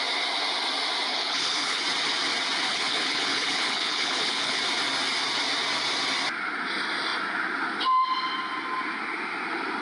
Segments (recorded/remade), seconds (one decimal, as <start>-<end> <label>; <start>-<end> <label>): 0.0-1.1 recorded; 1.1-1.8 remade; 1.8-2.7 recorded; 2.7-4.6 remade; 4.6-9.8 recorded